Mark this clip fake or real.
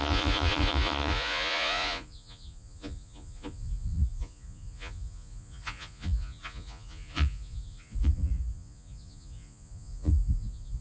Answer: fake